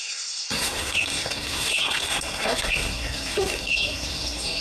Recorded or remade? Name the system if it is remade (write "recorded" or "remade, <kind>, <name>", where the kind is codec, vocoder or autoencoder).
remade, codec, SNAC